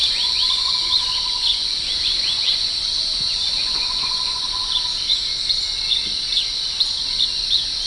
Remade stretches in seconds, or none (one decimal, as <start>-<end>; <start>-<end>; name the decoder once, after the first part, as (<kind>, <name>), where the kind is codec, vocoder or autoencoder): 0.0-4.7 (vocoder, Vocos)